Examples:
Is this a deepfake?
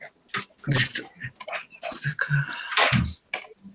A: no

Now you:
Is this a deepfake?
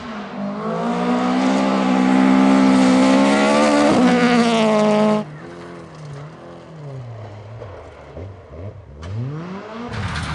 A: no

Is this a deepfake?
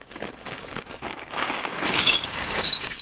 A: yes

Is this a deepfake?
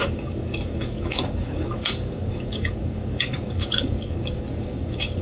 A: yes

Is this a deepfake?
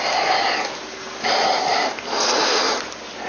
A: no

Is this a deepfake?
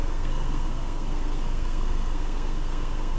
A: yes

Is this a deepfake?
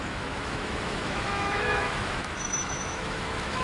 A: yes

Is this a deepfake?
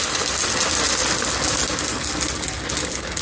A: no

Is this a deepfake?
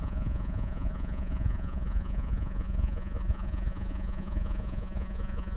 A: yes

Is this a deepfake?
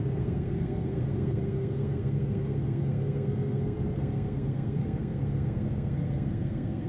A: yes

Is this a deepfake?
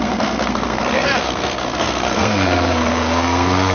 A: yes